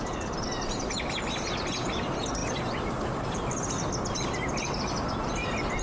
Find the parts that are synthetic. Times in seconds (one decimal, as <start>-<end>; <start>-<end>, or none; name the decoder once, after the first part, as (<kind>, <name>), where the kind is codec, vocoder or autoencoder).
none